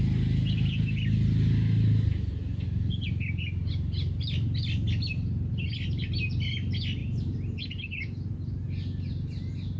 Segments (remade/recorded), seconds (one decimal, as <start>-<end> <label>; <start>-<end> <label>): 0.0-9.8 recorded

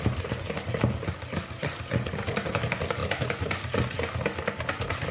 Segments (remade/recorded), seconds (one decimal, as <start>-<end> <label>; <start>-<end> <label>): 0.0-5.1 recorded

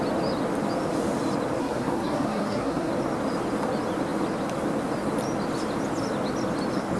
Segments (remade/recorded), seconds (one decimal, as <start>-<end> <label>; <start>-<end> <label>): 0.0-1.6 recorded; 1.6-2.9 remade; 2.9-7.0 recorded

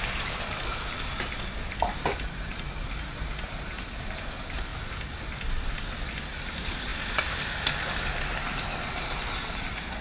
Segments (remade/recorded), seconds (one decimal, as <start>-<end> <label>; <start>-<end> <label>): 0.0-10.0 recorded

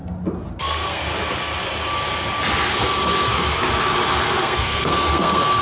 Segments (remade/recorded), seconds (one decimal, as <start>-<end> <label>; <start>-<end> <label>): 0.0-0.6 recorded; 0.6-1.0 remade; 1.0-4.4 recorded; 4.4-5.6 remade

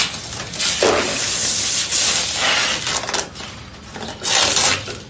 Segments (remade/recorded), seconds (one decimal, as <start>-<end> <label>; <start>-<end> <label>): 0.0-5.1 recorded

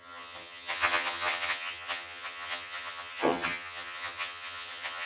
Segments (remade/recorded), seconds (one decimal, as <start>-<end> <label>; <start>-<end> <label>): 0.0-5.1 remade

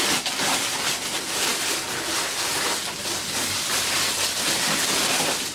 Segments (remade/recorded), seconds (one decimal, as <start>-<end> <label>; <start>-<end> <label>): 0.0-5.5 recorded